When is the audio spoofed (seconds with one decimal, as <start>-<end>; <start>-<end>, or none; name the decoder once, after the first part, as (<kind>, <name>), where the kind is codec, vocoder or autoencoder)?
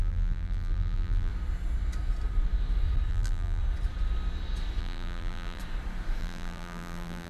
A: 0.0-1.3 (vocoder, BigVGAN v2); 3.1-3.6; 4.8-5.6; 6.2-7.3